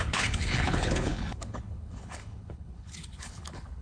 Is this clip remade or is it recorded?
remade